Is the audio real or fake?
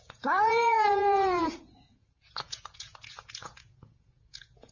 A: fake